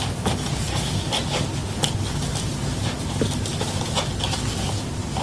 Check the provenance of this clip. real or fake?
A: real